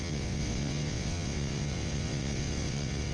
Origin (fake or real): fake